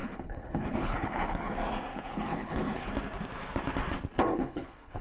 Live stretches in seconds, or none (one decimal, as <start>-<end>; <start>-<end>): 1.5-1.9; 2.9-4.3